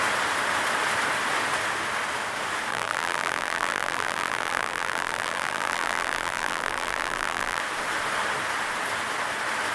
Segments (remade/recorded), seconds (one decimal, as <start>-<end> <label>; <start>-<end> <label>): 0.0-2.7 recorded; 2.7-7.6 remade; 7.6-9.7 recorded